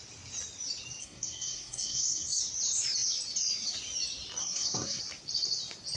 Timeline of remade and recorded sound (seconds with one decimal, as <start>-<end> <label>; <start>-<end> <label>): 0.0-1.0 recorded; 1.0-2.4 remade; 2.4-4.4 recorded; 4.4-5.0 remade; 5.0-6.0 recorded